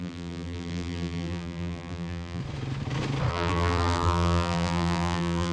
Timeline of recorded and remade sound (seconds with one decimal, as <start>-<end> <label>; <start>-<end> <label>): 0.0-2.4 remade; 2.4-3.3 recorded; 3.3-5.5 remade